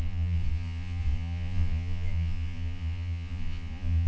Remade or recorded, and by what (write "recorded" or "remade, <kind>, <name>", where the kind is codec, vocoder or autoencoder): remade, vocoder, Vocos